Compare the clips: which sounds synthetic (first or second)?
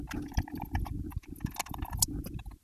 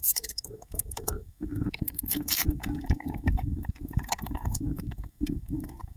second